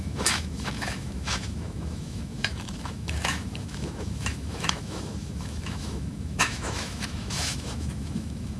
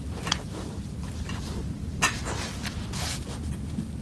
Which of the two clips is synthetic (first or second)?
first